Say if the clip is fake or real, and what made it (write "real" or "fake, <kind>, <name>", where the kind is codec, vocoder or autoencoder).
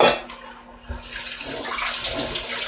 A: real